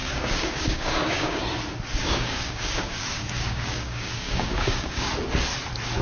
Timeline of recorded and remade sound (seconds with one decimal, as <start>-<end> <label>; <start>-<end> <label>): 0.0-1.4 remade; 1.4-2.0 recorded; 2.0-5.1 remade; 5.1-6.0 recorded